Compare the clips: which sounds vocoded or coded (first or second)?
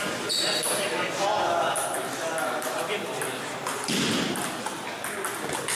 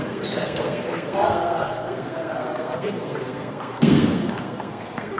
second